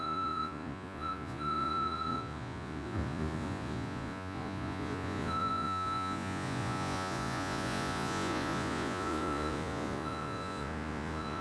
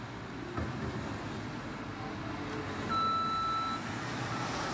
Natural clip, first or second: second